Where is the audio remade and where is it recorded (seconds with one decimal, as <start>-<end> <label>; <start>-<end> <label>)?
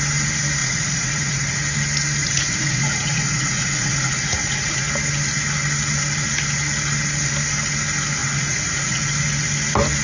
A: 0.0-0.6 recorded; 0.6-1.6 remade; 1.6-2.2 recorded; 2.2-4.9 remade; 4.9-8.2 recorded; 8.2-9.0 remade; 9.0-10.0 recorded